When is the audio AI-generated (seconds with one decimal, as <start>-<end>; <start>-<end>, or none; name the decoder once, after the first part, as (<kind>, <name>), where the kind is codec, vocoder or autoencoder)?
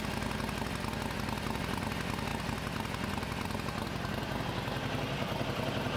none